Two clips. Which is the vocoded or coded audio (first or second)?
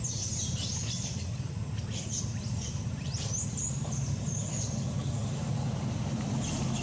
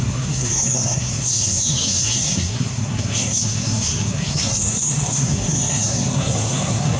second